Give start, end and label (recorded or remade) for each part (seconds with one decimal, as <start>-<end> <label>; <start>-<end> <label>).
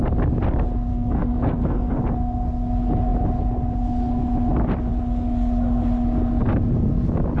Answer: 0.0-0.9 recorded; 0.9-2.0 remade; 2.0-7.4 recorded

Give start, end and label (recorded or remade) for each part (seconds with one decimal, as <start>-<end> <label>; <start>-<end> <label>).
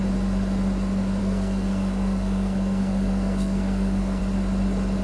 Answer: 0.0-1.2 recorded; 1.2-4.2 remade; 4.2-5.0 recorded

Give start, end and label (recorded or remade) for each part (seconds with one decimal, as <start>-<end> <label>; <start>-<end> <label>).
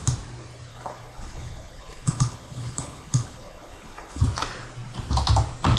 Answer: 0.0-0.7 recorded; 0.7-4.2 remade; 4.2-5.8 recorded